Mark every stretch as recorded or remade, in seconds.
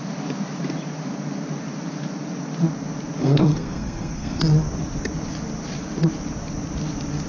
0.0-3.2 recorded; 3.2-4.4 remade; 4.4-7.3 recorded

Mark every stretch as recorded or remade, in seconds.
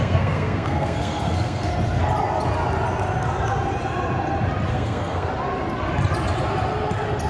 0.0-1.7 remade; 1.7-4.7 recorded; 4.7-5.3 remade; 5.3-7.3 recorded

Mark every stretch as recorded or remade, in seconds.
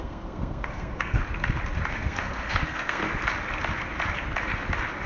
0.0-1.2 remade; 1.2-1.9 recorded; 1.9-3.0 remade; 3.0-5.1 recorded